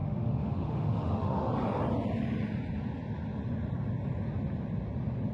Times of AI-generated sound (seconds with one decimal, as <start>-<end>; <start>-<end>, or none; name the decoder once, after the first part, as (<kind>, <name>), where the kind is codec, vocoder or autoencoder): 0.0-1.5 (autoencoder, DAC-VAE)